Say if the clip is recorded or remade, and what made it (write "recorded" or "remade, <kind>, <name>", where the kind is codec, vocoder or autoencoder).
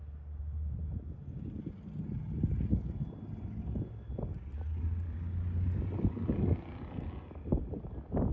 recorded